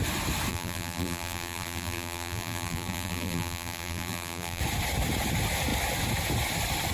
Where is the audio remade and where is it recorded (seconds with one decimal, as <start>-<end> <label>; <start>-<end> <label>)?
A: 0.0-0.5 recorded; 0.5-4.6 remade; 4.6-6.9 recorded